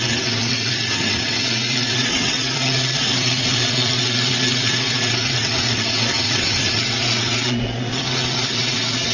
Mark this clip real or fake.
fake